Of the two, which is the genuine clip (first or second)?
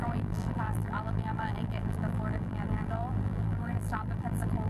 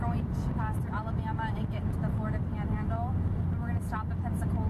second